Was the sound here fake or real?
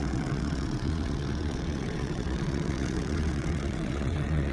fake